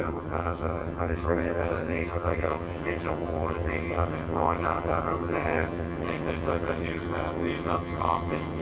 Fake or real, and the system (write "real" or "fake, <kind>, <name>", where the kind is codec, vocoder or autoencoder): fake, vocoder, HiFi-GAN